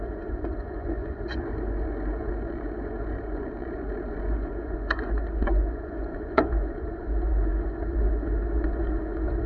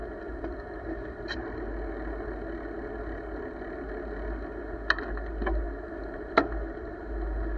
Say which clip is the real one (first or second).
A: second